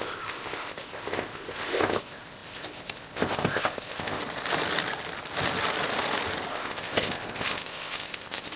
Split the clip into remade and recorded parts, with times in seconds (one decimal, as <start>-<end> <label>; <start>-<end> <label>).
0.0-4.2 remade; 4.2-6.5 recorded; 6.5-8.6 remade